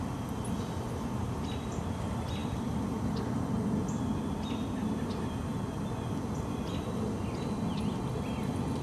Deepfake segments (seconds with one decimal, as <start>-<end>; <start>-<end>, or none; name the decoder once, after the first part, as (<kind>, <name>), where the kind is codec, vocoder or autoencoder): none

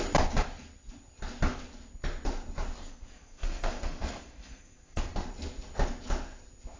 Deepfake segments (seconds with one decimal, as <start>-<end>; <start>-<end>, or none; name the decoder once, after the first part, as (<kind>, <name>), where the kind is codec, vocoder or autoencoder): 2.8-5.3 (codec, SNAC)

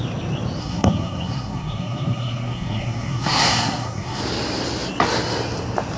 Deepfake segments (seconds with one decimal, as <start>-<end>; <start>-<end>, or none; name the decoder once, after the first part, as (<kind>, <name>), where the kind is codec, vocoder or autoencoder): 0.6-4.2 (codec, SNAC)

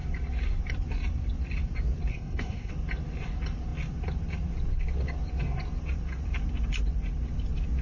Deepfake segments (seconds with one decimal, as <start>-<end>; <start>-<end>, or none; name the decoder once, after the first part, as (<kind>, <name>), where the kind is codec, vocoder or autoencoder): 2.1-2.7 (codec, SNAC)